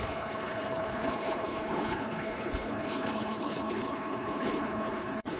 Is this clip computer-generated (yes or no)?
yes